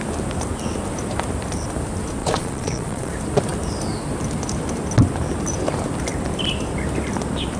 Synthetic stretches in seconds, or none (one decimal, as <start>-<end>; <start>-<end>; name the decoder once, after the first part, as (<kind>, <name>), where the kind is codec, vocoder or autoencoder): 2.2-3.1 (vocoder, Vocos)